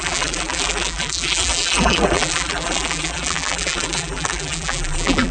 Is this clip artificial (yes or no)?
yes